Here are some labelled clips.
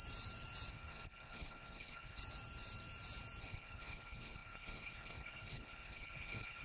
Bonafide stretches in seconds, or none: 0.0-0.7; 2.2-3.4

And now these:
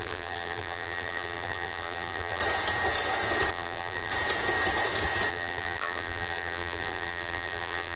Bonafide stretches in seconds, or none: 2.4-3.5; 4.1-5.3

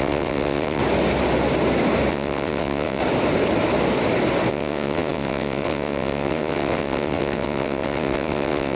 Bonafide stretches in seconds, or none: 0.8-2.1; 3.0-4.5

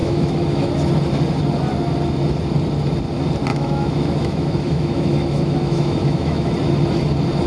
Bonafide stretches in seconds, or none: 0.7-3.5; 6.5-7.5

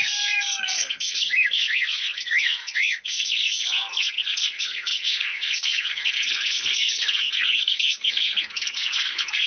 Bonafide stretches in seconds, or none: none

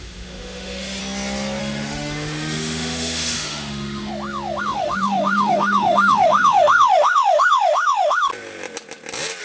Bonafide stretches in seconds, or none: 1.0-1.6; 4.1-4.6; 8.3-9.4

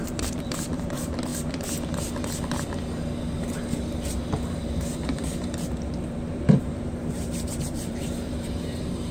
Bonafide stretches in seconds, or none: 1.3-4.6

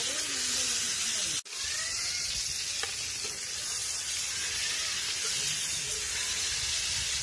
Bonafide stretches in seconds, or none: 0.0-7.2